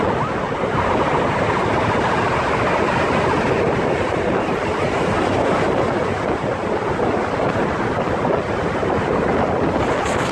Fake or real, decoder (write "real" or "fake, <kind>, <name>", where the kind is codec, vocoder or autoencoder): real